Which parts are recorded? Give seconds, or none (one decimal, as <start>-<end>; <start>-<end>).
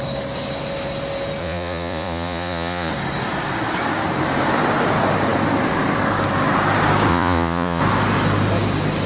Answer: 0.0-1.4; 2.9-7.1; 7.8-9.1